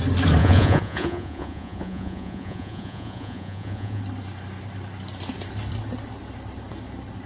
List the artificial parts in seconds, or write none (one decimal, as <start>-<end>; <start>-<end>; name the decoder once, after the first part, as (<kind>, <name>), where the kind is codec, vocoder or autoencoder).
0.4-4.0 (vocoder, Vocos)